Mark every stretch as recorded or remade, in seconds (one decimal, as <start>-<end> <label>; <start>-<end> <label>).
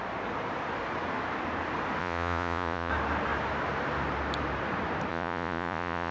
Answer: 0.0-2.0 recorded; 2.0-2.9 remade; 2.9-5.1 recorded; 5.1-6.1 remade